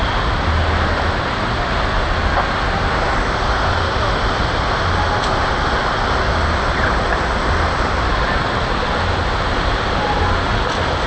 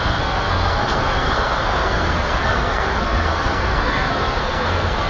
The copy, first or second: second